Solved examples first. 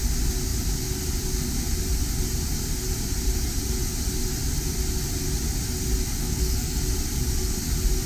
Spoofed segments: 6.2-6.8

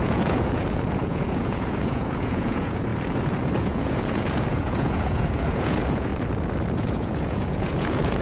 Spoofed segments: 0.0-2.9; 3.6-6.1; 6.7-8.2

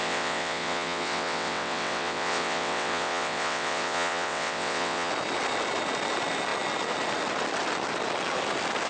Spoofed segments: 0.0-5.1

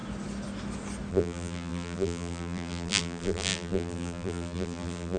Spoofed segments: 1.1-5.2